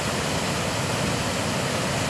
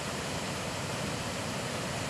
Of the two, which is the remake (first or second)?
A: second